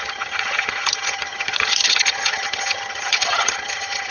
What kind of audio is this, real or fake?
fake